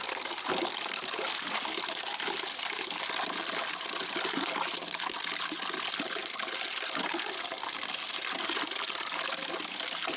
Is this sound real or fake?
real